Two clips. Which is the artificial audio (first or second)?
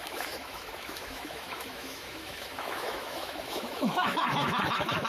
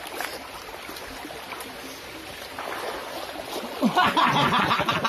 first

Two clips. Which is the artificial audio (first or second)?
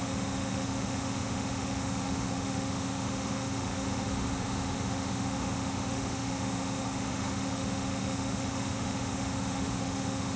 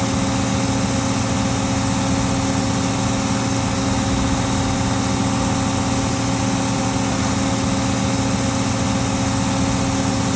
first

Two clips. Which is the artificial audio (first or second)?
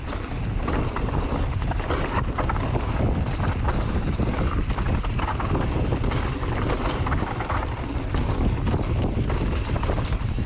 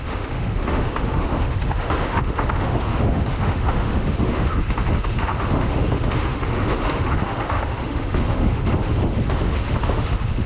second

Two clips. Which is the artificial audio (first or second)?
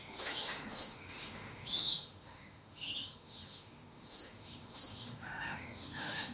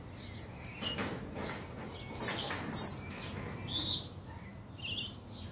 first